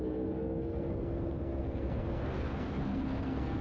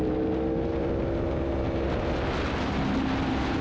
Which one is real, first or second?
second